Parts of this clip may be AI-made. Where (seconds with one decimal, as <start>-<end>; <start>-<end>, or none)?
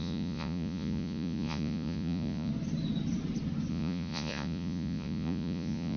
0.0-2.5; 3.7-6.0